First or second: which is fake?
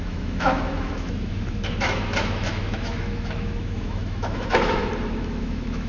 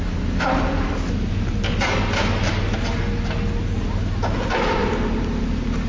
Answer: first